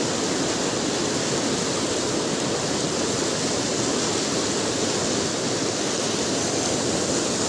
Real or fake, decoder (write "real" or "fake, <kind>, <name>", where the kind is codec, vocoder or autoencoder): real